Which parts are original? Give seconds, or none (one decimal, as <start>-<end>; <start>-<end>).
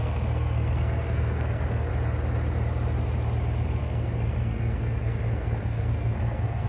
1.9-3.8